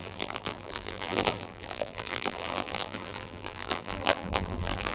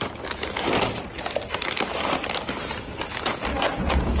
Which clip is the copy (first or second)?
first